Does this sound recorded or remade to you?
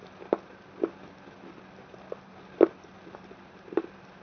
recorded